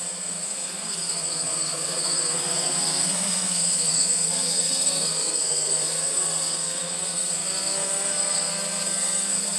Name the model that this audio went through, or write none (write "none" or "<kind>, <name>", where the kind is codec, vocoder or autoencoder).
codec, SNAC